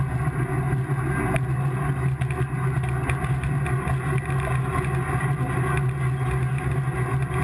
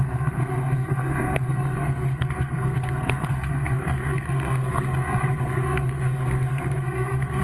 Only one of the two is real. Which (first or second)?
first